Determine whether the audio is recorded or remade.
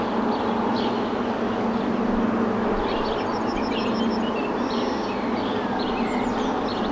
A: recorded